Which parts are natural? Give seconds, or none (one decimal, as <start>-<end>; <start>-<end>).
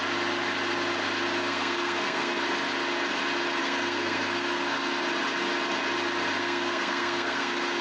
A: 0.0-1.4; 2.4-3.6; 5.0-6.4